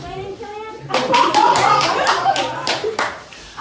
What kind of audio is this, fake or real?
fake